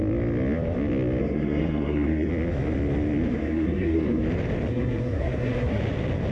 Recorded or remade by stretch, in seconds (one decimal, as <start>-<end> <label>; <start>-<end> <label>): 0.0-1.2 recorded; 1.2-2.3 remade; 2.3-3.3 recorded; 3.3-4.2 remade; 4.2-4.7 recorded; 4.7-5.8 remade; 5.8-6.3 recorded